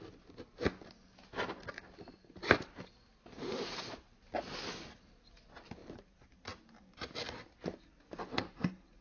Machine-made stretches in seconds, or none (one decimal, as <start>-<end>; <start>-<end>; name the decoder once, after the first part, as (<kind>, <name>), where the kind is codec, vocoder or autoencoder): none